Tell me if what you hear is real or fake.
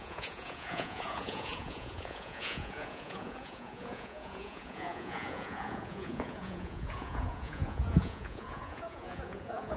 fake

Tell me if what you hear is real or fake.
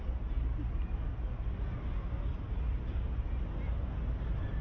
real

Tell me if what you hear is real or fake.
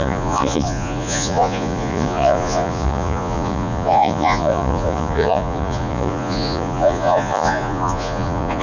fake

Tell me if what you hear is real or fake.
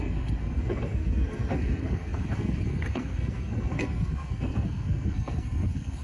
fake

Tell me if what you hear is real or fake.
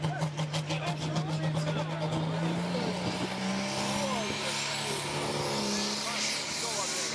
real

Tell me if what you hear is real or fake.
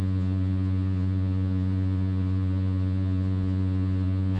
fake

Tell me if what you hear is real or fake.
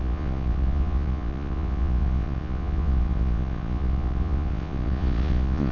fake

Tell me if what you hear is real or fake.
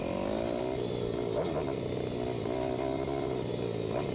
real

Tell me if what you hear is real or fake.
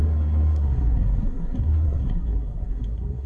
fake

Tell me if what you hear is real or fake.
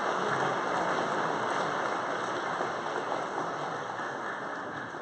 real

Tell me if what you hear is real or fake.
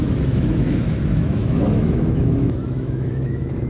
fake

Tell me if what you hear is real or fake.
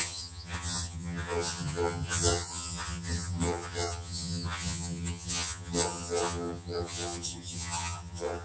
fake